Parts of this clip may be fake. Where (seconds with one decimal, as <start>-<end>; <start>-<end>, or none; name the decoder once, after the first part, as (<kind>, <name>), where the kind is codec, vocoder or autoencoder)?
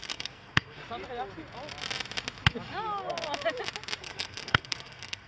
0.0-0.8 (codec, SNAC); 4.0-5.3